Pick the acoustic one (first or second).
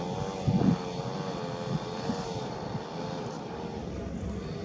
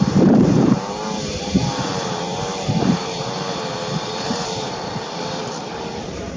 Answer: first